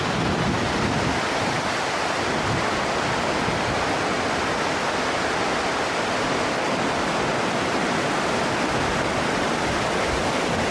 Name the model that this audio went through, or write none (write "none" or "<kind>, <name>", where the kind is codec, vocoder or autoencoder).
none